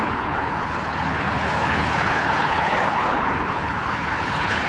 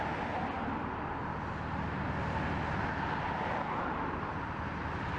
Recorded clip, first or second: second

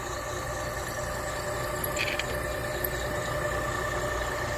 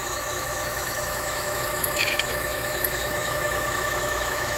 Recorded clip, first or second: first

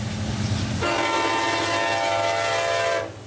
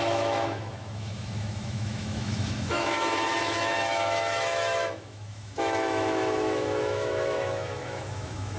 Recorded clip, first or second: first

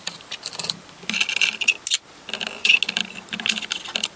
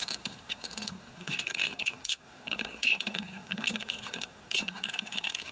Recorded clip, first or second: first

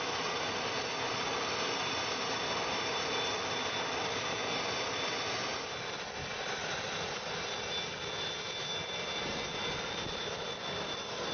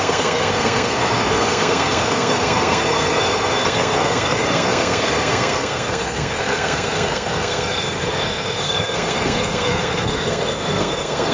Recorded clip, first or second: first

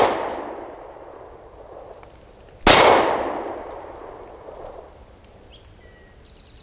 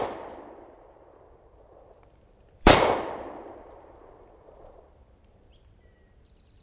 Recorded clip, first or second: first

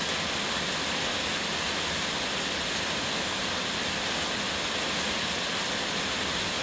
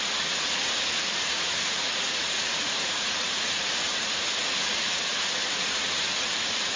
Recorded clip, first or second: first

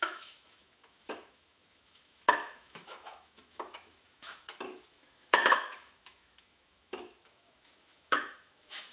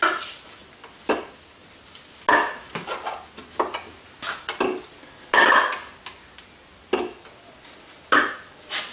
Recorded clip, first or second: second